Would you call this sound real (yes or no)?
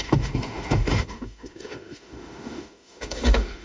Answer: no